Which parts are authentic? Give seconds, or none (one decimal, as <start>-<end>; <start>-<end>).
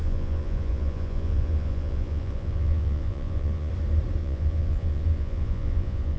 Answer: 3.7-4.2